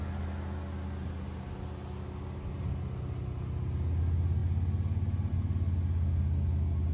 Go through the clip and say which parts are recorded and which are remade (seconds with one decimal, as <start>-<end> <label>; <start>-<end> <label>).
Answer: 0.0-6.9 recorded